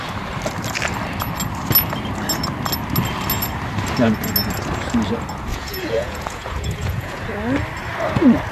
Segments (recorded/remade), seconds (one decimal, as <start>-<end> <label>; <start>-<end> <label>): 0.0-5.5 recorded; 5.5-7.2 remade; 7.2-8.5 recorded